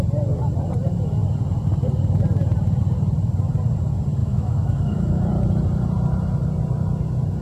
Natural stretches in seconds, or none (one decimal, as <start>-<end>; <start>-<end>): 0.0-4.2; 5.2-7.4